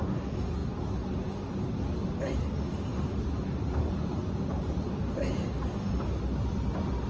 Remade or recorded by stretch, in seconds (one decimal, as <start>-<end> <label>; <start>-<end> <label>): 0.0-7.1 recorded